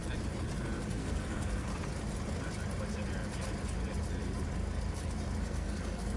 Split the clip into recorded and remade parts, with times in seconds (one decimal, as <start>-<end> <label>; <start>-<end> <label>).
0.0-0.9 recorded; 0.9-1.7 remade; 1.7-5.4 recorded; 5.4-6.2 remade